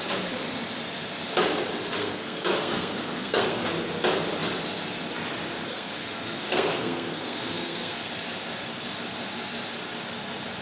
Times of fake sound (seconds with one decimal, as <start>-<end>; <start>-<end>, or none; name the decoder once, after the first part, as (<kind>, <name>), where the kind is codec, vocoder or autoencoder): 2.0-3.7 (codec, SNAC); 5.7-8.1